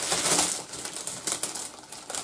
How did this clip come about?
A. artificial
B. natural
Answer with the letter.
B